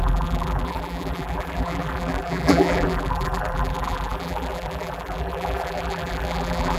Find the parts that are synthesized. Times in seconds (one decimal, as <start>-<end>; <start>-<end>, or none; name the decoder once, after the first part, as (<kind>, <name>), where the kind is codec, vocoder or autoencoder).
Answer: 0.0-6.8 (vocoder, BigVGAN v2)